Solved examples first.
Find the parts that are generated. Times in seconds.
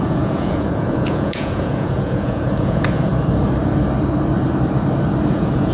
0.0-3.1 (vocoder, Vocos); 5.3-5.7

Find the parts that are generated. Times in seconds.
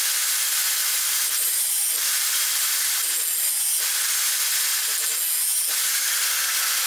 0.8-3.1 (vocoder, BigVGAN v2)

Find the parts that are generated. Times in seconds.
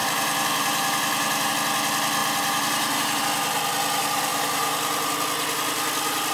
0.0-1.5 (vocoder, BigVGAN v2); 2.2-3.2; 4.3-5.1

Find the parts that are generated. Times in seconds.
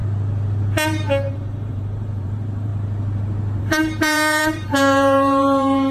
1.3-2.7 (vocoder, BigVGAN v2); 3.6-5.9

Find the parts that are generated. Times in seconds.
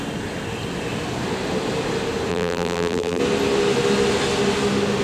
2.3-3.2 (vocoder, BigVGAN v2)